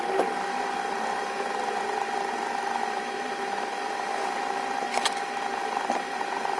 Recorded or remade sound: recorded